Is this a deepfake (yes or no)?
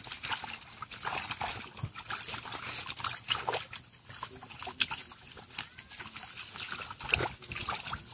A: no